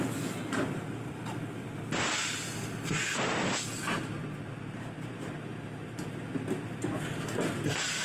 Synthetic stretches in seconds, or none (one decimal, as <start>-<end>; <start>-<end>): 0.0-2.2; 4.0-5.5; 7.5-8.0